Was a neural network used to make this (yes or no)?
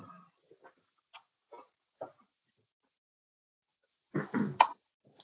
no